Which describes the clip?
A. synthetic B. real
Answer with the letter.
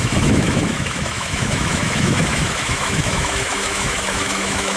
A